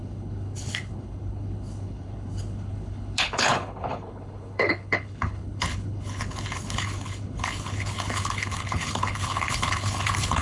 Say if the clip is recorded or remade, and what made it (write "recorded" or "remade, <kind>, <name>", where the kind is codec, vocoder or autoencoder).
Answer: remade, codec, HILCodec